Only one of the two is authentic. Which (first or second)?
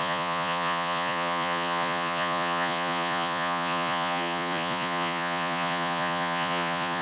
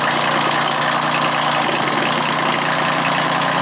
second